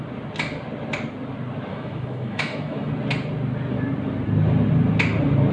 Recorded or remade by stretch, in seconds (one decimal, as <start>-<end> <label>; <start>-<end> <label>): 0.0-1.7 recorded; 1.7-2.9 remade; 2.9-5.5 recorded